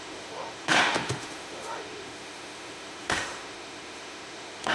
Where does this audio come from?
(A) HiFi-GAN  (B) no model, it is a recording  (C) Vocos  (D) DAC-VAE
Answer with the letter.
D